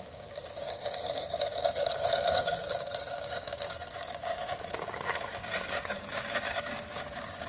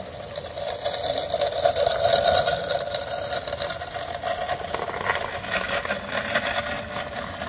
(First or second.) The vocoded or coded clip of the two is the first